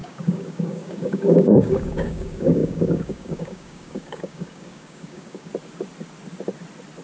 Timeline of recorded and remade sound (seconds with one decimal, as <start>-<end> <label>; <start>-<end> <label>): 0.0-5.5 remade; 5.5-7.0 recorded